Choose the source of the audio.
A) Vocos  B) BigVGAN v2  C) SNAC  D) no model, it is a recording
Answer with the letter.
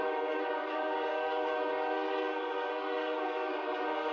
C